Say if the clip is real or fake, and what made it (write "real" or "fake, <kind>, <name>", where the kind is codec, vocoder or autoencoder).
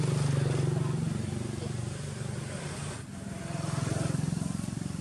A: real